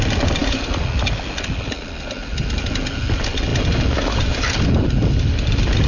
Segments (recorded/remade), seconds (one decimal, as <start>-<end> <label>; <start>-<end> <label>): 0.0-5.9 recorded